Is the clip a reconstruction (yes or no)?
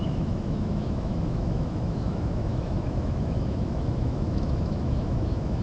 yes